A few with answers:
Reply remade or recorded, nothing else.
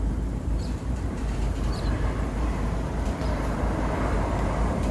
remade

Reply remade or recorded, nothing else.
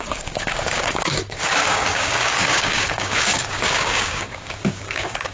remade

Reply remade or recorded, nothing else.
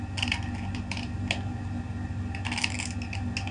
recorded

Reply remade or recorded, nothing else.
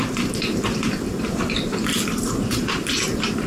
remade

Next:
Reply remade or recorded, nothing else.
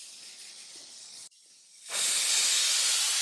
recorded